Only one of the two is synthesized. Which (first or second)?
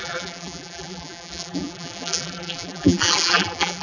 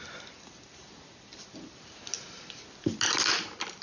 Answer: first